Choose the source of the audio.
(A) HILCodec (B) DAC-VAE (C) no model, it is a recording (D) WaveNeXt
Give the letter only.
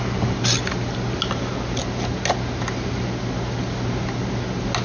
C